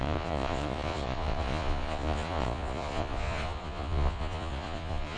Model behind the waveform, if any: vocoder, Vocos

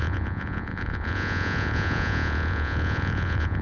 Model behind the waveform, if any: vocoder, Vocos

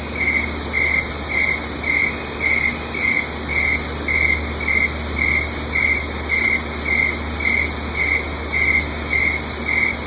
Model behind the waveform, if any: none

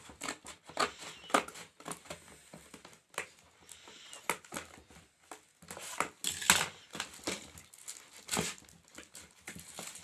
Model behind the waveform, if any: none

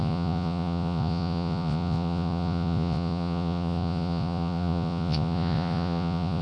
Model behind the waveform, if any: vocoder, Vocos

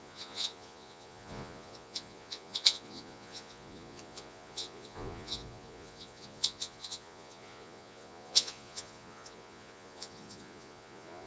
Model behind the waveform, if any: vocoder, Vocos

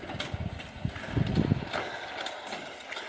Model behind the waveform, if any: none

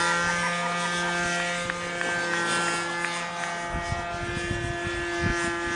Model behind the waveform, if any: none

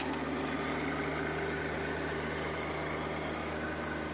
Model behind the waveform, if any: none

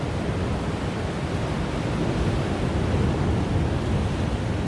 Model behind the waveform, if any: none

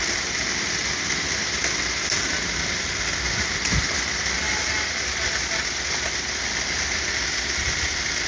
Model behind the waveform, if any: none